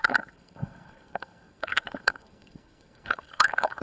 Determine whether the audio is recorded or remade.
remade